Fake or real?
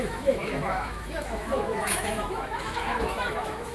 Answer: fake